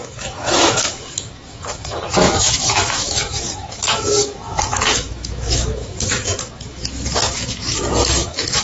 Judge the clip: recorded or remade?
remade